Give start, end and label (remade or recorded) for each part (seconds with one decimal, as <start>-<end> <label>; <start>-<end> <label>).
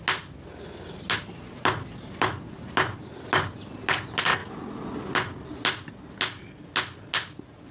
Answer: 0.0-7.7 recorded